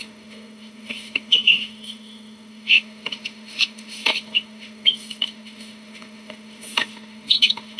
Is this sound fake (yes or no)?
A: yes